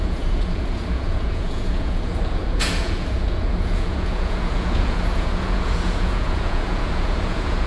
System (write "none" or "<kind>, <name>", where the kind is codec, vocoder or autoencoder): vocoder, Vocos